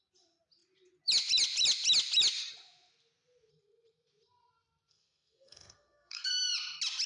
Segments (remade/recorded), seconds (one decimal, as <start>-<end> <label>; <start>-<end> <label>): 0.0-4.9 recorded; 4.9-6.3 remade; 6.3-7.1 recorded